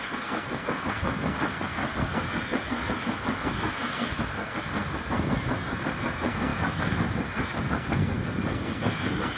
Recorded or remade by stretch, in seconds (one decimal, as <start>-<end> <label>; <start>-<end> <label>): 0.0-9.4 remade